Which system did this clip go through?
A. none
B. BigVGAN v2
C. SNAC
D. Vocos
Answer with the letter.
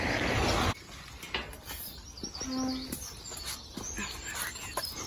A